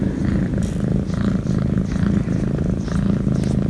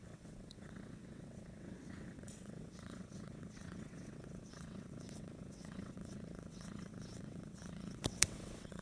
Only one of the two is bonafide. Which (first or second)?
first